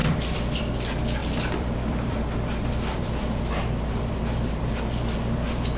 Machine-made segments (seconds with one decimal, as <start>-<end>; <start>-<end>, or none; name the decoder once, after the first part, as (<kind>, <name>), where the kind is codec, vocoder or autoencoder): 0.0-0.6 (vocoder, BigVGAN v2); 1.2-4.7